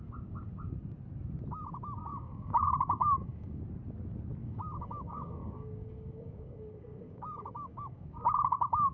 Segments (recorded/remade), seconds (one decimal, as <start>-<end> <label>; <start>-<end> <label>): 0.0-2.1 recorded; 2.1-3.6 remade; 3.6-4.4 recorded; 4.4-8.9 remade